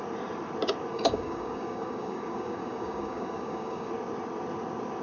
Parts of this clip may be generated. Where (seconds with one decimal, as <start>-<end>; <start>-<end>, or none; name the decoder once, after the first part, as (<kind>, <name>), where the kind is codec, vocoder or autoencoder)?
0.9-3.9 (codec, DAC)